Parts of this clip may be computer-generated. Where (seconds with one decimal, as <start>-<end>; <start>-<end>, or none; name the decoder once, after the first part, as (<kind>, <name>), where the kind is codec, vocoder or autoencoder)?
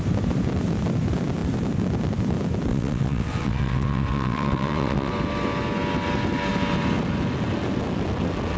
2.7-5.1 (vocoder, WaveNeXt)